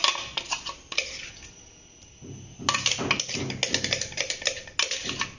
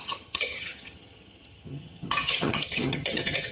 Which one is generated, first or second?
second